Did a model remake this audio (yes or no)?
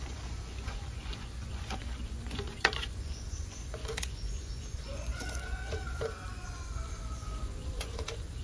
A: yes